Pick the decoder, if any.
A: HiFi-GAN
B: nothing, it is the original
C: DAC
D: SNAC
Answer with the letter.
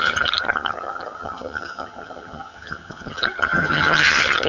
A